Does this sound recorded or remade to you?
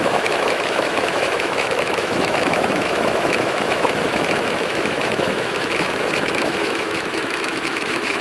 remade